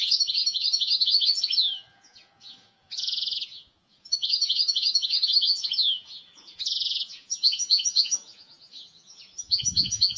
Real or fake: fake